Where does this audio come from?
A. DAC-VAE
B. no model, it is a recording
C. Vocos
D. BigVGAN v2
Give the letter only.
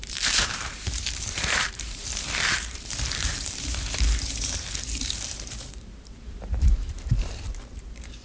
D